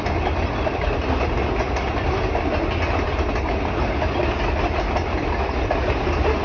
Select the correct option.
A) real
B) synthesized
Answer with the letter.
A